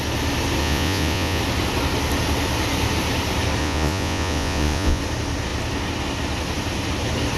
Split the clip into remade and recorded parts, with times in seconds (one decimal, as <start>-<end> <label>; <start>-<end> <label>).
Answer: 0.0-0.6 recorded; 0.6-1.4 remade; 1.4-3.6 recorded; 3.6-5.0 remade; 5.0-7.4 recorded